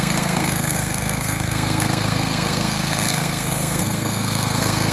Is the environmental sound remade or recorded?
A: remade